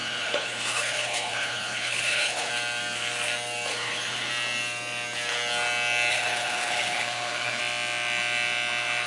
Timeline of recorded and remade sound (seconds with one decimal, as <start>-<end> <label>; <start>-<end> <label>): 0.0-2.5 remade; 2.5-3.7 recorded; 3.7-4.3 remade; 4.3-6.1 recorded; 6.1-7.6 remade; 7.6-9.1 recorded